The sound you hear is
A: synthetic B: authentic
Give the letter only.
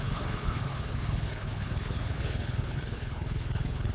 A